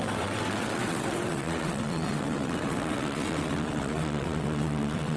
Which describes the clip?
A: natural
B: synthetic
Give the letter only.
B